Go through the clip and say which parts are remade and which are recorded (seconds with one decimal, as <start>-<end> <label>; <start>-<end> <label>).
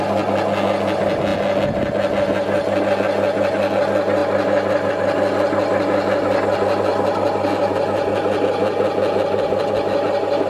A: 0.0-10.5 recorded